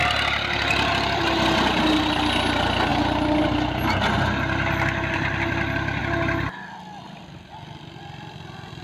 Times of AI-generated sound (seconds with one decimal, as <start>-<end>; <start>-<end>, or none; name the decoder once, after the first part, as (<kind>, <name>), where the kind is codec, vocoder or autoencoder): none